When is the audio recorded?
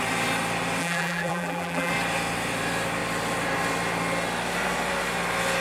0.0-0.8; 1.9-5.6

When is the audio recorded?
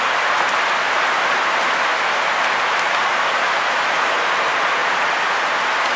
0.0-1.9; 4.0-6.0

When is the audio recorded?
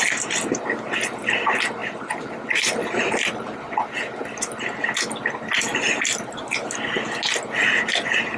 0.0-1.8; 3.7-8.4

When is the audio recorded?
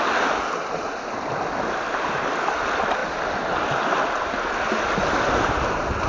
0.0-6.1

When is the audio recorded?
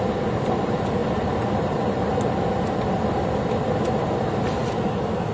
4.6-5.3